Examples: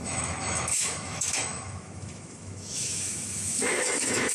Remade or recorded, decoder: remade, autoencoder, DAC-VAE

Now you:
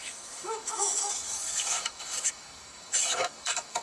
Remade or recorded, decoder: remade, autoencoder, DAC-VAE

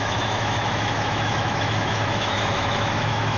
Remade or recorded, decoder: remade, autoencoder, DAC-VAE